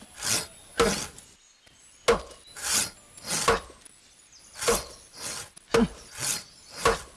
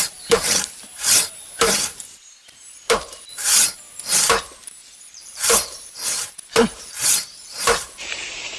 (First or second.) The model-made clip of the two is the second